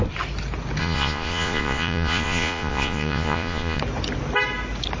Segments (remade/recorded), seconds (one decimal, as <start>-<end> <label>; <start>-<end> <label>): 0.0-0.8 recorded; 0.8-3.8 remade; 3.8-5.0 recorded